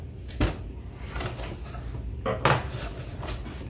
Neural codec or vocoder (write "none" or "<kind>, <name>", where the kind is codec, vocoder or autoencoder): none